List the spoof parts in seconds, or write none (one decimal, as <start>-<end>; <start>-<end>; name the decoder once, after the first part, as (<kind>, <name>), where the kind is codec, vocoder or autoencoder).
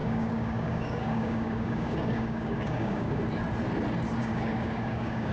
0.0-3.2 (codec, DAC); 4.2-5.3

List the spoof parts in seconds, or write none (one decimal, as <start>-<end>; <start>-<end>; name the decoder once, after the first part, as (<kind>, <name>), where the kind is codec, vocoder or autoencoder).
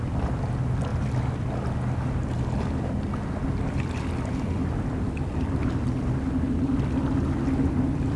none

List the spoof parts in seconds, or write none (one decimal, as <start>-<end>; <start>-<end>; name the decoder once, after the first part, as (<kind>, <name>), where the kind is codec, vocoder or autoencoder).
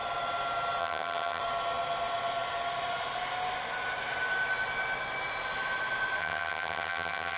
0.8-1.4 (vocoder, HiFi-GAN); 6.2-7.4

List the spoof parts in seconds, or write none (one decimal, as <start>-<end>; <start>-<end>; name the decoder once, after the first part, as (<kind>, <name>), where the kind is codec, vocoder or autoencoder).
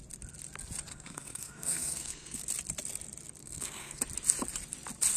0.9-2.4 (codec, SNAC); 3.4-4.0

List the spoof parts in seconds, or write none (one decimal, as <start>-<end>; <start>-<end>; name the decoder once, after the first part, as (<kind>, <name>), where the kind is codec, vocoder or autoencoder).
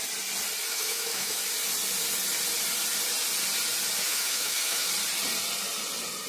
0.7-1.4 (autoencoder, DAC-VAE); 4.0-4.9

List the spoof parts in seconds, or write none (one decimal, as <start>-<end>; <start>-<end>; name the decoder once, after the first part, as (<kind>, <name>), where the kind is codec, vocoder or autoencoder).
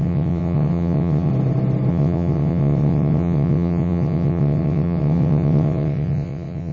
0.0-1.3 (vocoder, WaveNeXt); 1.9-6.7